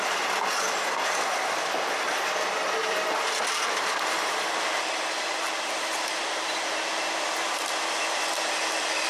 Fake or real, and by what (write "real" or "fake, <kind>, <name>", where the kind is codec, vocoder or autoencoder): fake, vocoder, BigVGAN v2